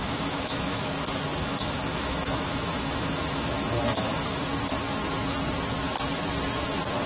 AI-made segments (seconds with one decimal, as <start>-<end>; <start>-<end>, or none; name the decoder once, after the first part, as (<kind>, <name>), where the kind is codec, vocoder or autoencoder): 0.0-0.8 (autoencoder, DAC-VAE); 1.3-4.4